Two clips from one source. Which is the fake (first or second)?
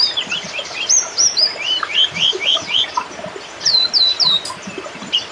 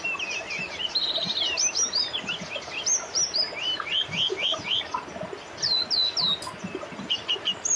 first